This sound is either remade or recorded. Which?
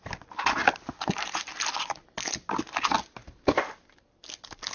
recorded